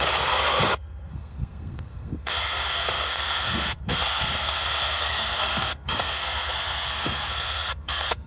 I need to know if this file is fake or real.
fake